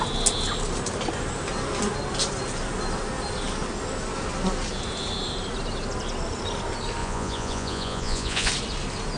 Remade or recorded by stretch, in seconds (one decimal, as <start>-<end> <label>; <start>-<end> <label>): 0.0-7.0 recorded; 7.0-8.5 remade; 8.5-9.2 recorded